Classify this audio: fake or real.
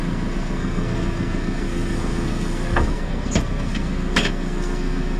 fake